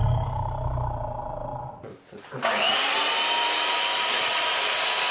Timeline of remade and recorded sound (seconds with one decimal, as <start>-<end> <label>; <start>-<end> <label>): 0.0-5.1 recorded